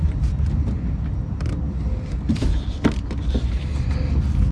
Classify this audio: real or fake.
real